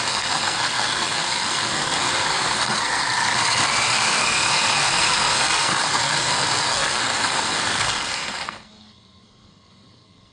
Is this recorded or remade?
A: remade